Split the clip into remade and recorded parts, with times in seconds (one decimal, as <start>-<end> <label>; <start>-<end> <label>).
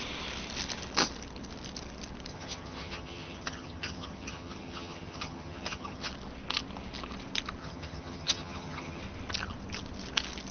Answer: 0.0-2.3 recorded; 2.3-6.1 remade; 6.1-7.6 recorded; 7.6-9.0 remade; 9.0-10.5 recorded